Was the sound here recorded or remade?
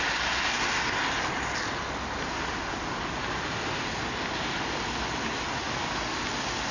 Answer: recorded